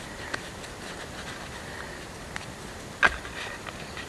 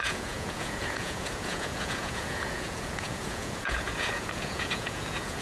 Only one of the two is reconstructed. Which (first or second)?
second